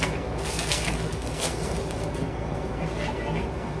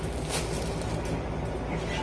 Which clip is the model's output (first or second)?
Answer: first